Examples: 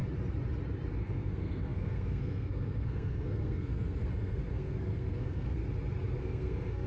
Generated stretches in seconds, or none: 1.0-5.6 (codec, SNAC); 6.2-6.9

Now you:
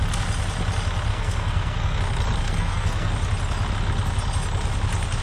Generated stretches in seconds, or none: 1.1-2.0 (codec, SNAC); 2.4-3.1

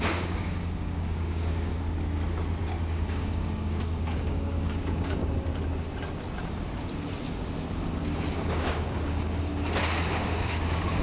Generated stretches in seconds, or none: 0.0-1.7 (codec, DAC); 2.6-5.2; 8.3-9.5; 10.1-11.0

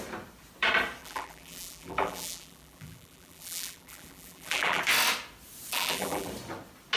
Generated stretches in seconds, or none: 1.0-4.8 (vocoder, BigVGAN v2); 5.7-6.3

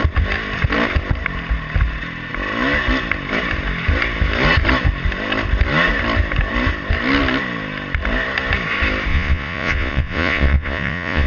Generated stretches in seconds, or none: 9.1-11.3 (vocoder, Vocos)

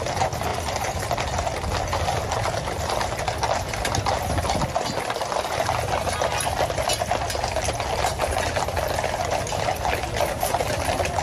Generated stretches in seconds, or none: 0.5-1.1 (vocoder, BigVGAN v2)

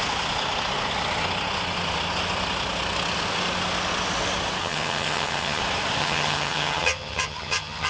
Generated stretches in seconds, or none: 4.6-5.6 (vocoder, HiFi-GAN); 6.0-7.9

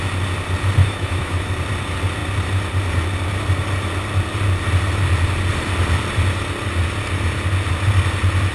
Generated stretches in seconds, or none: 0.8-1.5 (autoencoder, DAC-VAE)